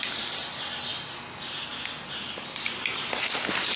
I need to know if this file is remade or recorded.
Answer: recorded